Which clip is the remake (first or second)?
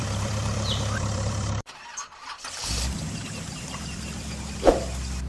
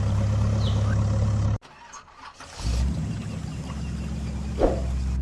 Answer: first